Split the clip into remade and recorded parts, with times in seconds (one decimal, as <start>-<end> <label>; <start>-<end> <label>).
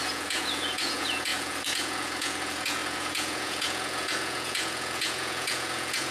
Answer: 0.0-6.1 remade